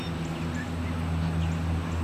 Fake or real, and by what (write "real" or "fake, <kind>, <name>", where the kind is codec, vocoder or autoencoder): real